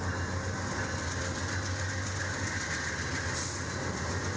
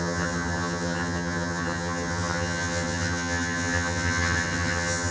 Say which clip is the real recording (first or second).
first